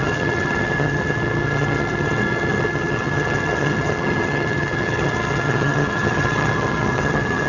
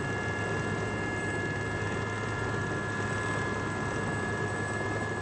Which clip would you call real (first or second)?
second